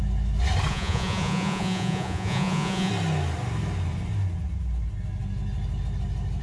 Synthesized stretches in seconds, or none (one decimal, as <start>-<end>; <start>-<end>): 0.7-2.9